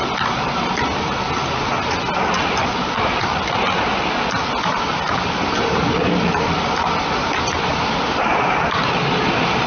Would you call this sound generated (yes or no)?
no